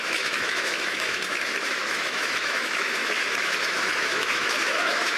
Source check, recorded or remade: remade